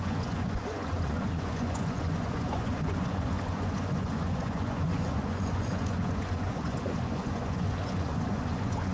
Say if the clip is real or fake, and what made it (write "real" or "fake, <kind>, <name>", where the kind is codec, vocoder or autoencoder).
fake, vocoder, Vocos